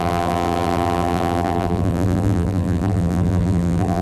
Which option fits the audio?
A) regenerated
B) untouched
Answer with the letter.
A